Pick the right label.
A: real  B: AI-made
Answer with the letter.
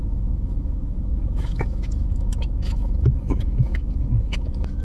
B